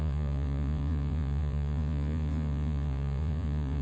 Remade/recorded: remade